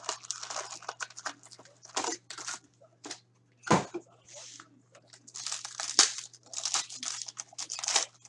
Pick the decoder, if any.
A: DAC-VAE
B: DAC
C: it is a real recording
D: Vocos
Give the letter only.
C